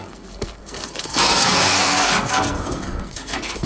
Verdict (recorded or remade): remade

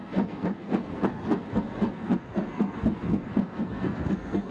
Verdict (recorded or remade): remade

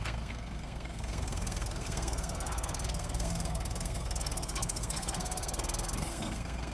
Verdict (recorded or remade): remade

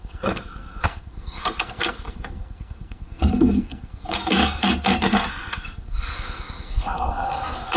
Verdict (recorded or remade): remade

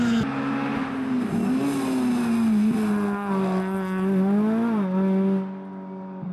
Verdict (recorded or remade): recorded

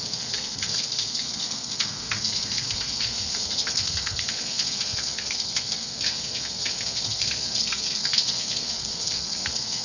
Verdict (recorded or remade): remade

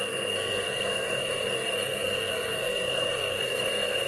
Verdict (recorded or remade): remade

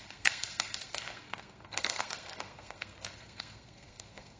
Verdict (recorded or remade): remade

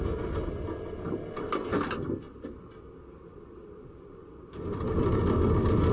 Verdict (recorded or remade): recorded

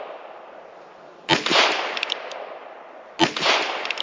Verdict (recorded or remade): recorded